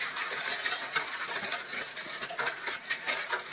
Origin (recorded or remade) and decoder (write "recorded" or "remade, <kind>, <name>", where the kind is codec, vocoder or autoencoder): remade, vocoder, Vocos